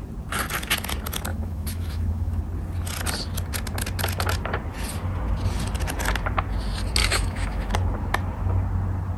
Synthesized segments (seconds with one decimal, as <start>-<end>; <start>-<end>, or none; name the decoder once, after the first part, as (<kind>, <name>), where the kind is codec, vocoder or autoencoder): 1.3-2.4 (autoencoder, DAC-VAE); 7.0-7.7